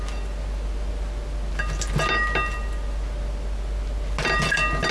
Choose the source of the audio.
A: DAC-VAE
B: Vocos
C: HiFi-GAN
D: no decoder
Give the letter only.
D